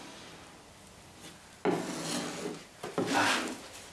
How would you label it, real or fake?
real